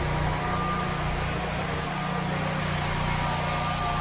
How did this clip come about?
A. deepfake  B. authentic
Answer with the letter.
B